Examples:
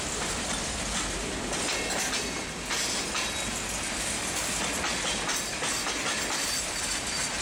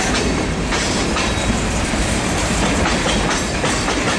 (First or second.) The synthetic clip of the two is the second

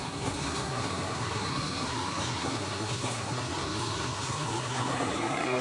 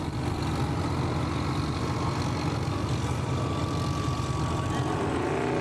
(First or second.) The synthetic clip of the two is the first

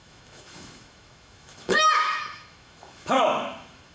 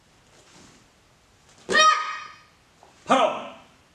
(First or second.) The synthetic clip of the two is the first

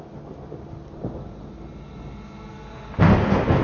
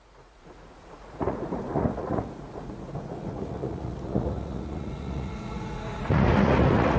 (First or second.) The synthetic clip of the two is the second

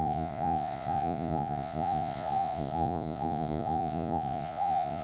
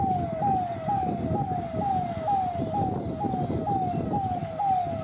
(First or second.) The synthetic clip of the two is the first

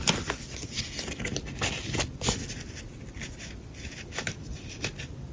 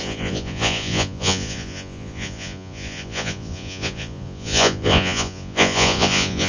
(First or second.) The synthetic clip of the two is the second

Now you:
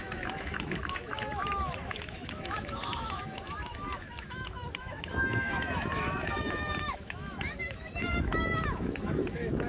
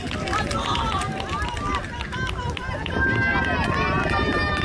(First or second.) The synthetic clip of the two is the first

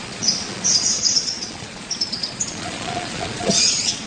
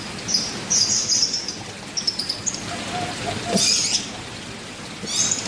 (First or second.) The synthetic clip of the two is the first